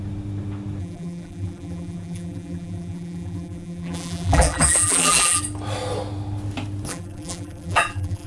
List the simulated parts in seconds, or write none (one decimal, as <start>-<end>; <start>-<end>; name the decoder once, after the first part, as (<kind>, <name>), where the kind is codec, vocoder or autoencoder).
0.8-5.4 (vocoder, BigVGAN v2); 6.9-8.3